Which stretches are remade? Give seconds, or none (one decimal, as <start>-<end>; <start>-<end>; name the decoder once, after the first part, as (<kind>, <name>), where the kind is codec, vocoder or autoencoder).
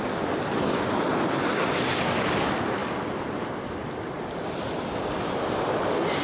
none